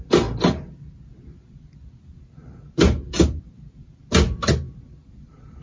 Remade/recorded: recorded